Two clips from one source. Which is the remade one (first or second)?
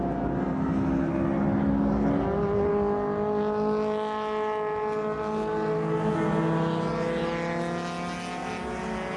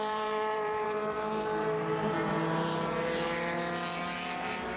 second